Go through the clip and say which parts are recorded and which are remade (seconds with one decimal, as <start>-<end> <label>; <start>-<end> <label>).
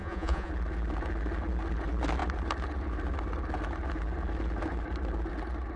0.0-0.5 remade; 0.5-5.8 recorded